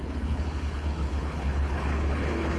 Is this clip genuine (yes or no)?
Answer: no